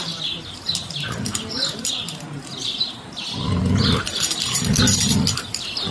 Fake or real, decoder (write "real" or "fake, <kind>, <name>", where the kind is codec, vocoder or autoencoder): real